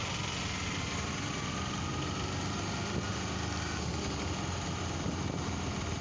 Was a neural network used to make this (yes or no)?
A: no